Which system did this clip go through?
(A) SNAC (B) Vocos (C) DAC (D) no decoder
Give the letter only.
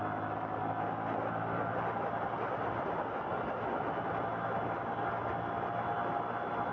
D